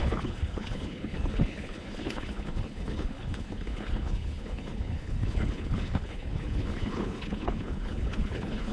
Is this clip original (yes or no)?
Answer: no